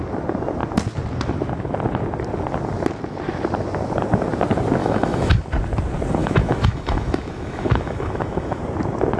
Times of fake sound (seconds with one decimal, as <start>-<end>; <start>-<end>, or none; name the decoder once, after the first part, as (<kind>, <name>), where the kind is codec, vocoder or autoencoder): 4.8-5.4 (autoencoder, DAC-VAE); 6.2-8.6

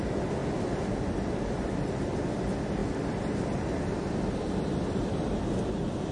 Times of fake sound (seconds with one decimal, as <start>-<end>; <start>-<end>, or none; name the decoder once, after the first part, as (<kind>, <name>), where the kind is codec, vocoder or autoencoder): none

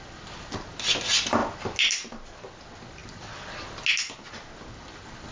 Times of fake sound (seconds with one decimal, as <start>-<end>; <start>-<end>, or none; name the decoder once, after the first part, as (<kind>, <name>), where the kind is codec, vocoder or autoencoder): none

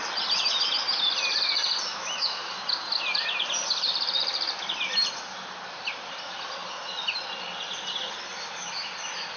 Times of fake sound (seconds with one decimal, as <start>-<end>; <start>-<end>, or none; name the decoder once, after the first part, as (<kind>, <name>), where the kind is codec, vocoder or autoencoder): 1.9-2.5 (autoencoder, DAC-VAE)

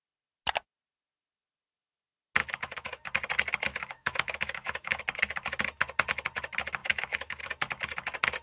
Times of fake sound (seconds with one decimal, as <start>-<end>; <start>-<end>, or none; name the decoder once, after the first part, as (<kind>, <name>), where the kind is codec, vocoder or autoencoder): 2.4-3.0 (autoencoder, DAC-VAE); 3.7-5.0; 6.8-7.4

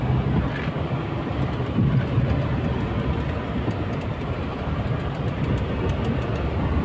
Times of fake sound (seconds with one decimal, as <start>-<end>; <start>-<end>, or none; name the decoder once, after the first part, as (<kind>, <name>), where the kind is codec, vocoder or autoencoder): none